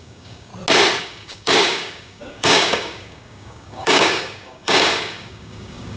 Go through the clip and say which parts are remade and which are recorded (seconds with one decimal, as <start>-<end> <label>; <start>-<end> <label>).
0.0-0.5 remade; 0.5-1.0 recorded; 1.0-6.0 remade